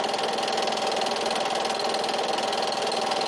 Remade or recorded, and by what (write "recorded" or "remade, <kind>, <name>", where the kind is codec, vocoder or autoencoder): recorded